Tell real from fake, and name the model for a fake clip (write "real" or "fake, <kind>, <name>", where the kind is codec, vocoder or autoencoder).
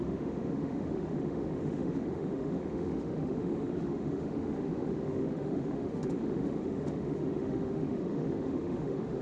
fake, autoencoder, DAC-VAE